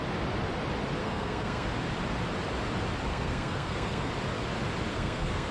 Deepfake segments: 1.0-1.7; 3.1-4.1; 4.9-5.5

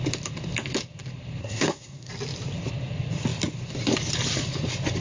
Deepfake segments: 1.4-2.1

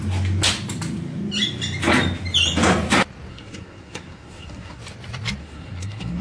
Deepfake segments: 3.3-4.8; 5.4-6.2